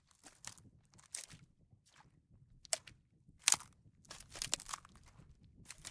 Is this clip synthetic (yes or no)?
no